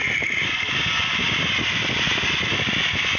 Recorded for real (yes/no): yes